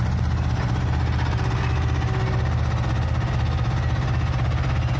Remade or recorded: recorded